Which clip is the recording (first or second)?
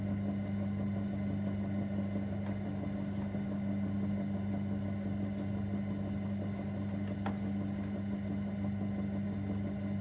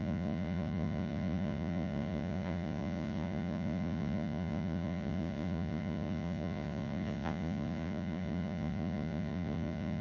first